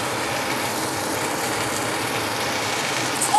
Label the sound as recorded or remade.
recorded